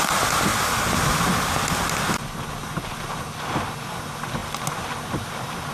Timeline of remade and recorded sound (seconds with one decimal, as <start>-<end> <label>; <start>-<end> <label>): 0.0-5.7 recorded